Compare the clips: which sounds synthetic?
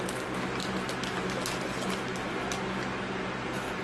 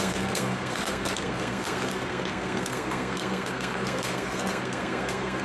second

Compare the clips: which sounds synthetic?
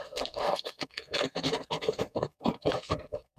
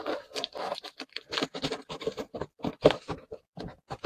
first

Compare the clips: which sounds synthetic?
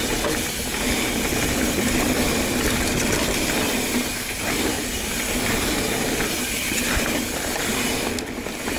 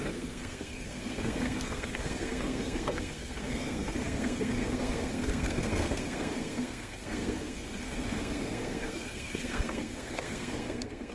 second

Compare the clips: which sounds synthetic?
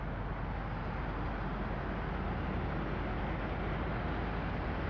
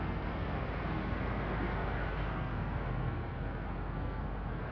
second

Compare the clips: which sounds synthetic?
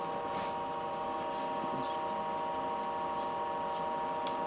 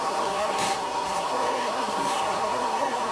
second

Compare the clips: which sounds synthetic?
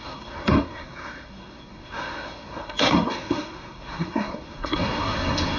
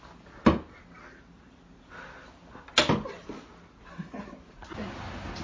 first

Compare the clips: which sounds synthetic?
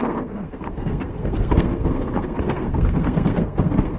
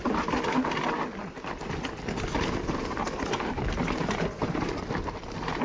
first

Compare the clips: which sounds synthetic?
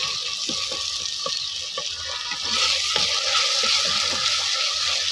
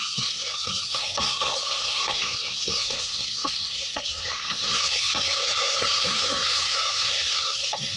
second